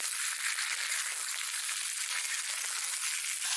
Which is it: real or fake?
real